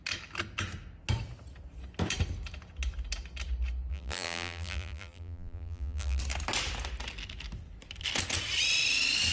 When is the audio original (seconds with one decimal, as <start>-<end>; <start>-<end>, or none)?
0.0-3.9; 6.2-9.3